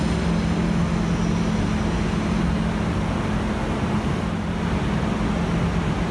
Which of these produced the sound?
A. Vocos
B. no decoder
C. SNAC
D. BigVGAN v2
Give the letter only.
B